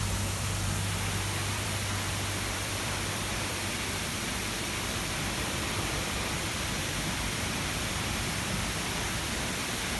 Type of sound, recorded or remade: remade